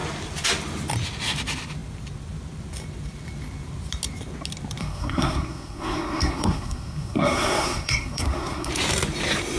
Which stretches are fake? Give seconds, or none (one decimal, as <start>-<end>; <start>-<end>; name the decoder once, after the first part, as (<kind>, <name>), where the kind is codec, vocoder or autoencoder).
4.8-8.7 (codec, SNAC)